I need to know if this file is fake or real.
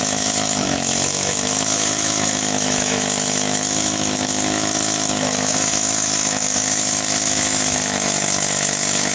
fake